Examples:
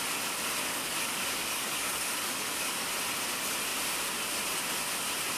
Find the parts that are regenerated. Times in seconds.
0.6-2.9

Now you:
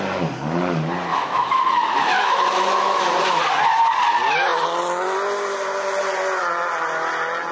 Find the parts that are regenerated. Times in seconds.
1.1-3.0

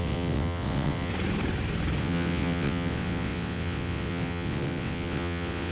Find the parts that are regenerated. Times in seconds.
0.0-1.1; 2.0-5.7

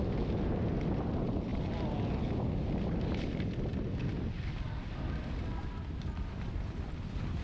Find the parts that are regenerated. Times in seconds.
none